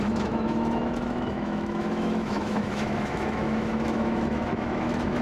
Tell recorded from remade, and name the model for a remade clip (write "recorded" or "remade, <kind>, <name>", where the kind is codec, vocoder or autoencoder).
remade, autoencoder, DAC-VAE